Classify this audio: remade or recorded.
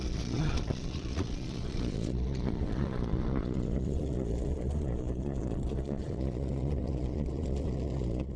remade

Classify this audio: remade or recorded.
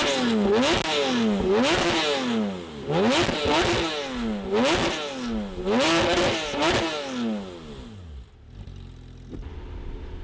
recorded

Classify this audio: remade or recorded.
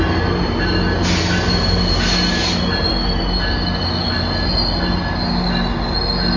recorded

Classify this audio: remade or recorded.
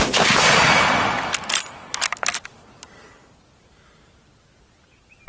recorded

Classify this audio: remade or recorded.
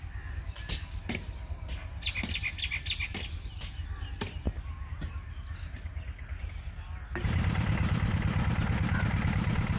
recorded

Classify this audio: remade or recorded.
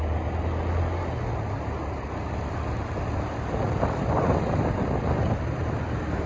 recorded